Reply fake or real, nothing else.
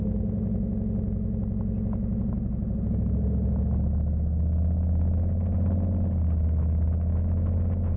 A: real